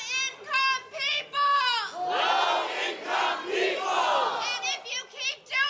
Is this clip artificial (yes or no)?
no